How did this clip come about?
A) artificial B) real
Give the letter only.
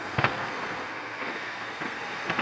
A